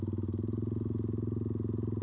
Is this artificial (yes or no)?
no